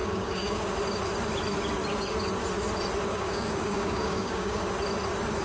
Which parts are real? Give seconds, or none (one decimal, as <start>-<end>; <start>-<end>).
0.7-3.1; 4.6-5.4